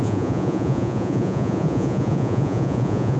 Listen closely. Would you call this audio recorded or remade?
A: remade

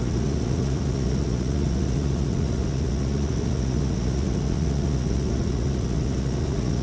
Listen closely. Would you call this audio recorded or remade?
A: remade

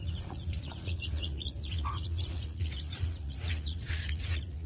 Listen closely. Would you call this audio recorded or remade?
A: remade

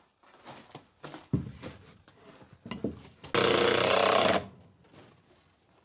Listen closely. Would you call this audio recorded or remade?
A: recorded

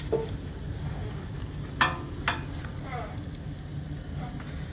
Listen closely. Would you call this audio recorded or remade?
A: recorded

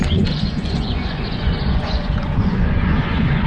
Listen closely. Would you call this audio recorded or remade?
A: remade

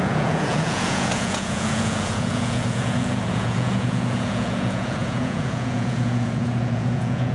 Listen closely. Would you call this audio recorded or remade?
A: remade